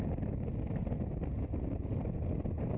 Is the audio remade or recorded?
recorded